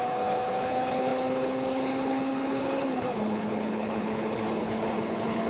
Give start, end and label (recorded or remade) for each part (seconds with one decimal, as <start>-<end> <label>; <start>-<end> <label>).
0.0-5.5 remade

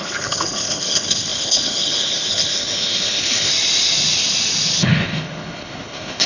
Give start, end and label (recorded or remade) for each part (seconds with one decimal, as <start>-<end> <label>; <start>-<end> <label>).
0.0-3.5 remade; 3.5-4.8 recorded; 4.8-6.3 remade

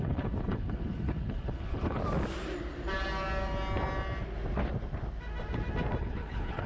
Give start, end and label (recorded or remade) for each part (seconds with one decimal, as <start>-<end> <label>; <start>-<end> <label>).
0.0-2.0 remade; 2.0-6.0 recorded; 6.0-6.7 remade

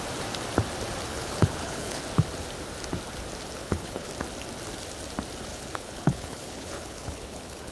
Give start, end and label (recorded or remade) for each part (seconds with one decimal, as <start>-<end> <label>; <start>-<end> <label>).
0.0-1.1 recorded; 1.1-2.0 remade; 2.0-3.6 recorded; 3.6-4.1 remade; 4.1-5.5 recorded; 5.5-7.7 remade

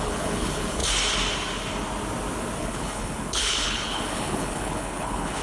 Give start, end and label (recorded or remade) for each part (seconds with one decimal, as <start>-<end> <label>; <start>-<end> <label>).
0.0-0.8 remade; 0.8-2.6 recorded; 2.6-5.4 remade

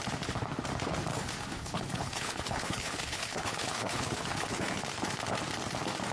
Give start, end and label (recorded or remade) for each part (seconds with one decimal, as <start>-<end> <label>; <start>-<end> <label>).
0.0-1.1 recorded; 1.1-4.8 remade; 4.8-6.1 recorded